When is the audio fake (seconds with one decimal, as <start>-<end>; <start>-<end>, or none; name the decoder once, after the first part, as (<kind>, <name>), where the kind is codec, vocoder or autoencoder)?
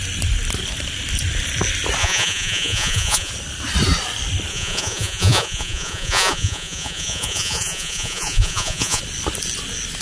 2.0-3.3 (vocoder, Vocos); 4.5-9.0